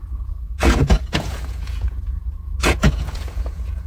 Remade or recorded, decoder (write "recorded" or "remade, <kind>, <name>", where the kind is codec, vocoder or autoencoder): remade, vocoder, Vocos